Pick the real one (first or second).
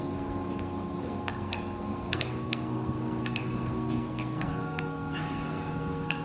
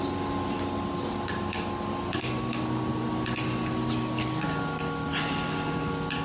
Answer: second